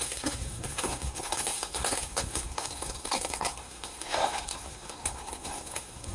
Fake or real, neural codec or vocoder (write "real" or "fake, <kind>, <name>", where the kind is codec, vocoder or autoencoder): fake, codec, SNAC